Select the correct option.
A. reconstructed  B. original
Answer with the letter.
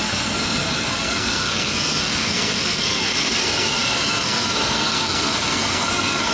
A